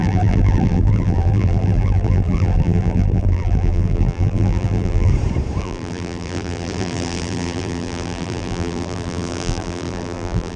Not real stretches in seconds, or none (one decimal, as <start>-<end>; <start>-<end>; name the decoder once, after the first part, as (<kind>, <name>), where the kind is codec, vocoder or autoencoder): 0.0-5.1 (vocoder, BigVGAN v2); 5.6-10.6